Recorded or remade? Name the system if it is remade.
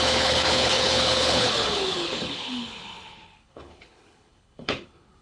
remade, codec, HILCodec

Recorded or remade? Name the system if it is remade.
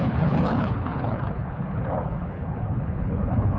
remade, codec, HILCodec